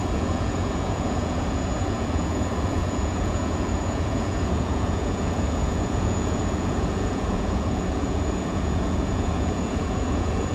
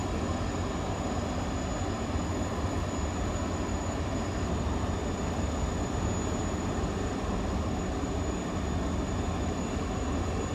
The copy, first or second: first